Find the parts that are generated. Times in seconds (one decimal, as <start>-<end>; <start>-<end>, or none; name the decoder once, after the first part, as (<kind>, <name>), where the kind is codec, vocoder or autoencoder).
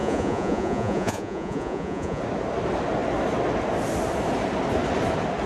0.0-2.2 (vocoder, Vocos)